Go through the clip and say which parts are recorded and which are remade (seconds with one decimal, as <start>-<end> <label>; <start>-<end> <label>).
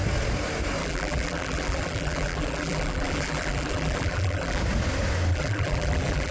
0.0-0.8 recorded; 0.8-4.6 remade; 4.6-5.3 recorded; 5.3-6.3 remade